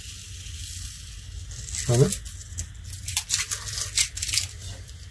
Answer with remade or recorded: recorded